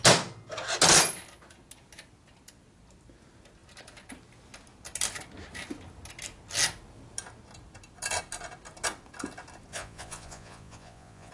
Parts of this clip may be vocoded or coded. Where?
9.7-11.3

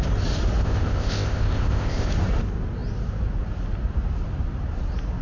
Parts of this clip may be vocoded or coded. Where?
0.6-2.1

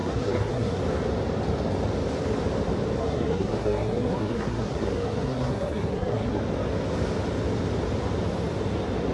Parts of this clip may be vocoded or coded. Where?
0.0-0.8; 3.0-6.4

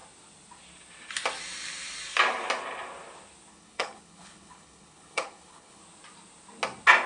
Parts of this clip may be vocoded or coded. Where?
3.5-5.8

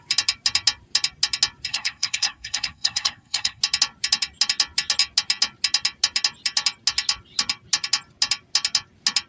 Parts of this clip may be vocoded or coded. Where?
1.7-3.6